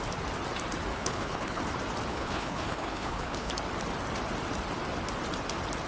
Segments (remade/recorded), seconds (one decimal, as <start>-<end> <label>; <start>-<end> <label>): 0.0-0.9 recorded; 0.9-1.6 remade; 1.6-2.1 recorded; 2.1-3.5 remade; 3.5-5.9 recorded